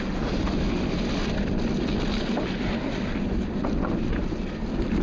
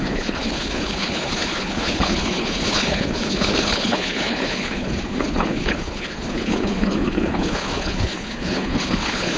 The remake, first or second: second